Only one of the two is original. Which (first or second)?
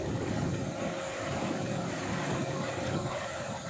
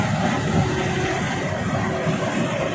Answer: second